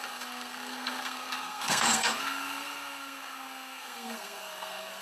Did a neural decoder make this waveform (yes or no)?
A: yes